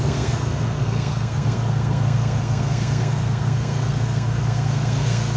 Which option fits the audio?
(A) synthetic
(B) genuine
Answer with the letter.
A